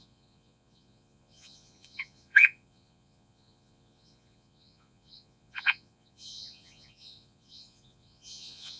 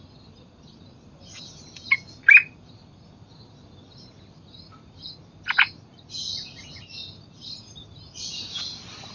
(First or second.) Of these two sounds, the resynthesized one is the first